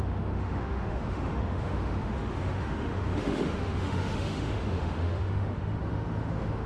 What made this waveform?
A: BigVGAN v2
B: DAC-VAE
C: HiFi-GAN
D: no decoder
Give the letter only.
B